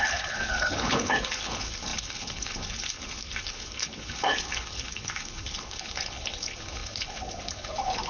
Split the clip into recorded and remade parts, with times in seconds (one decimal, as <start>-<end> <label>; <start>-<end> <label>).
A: 0.0-8.1 remade